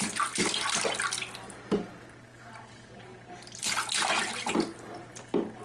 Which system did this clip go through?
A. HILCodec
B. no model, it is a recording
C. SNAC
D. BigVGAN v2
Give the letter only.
B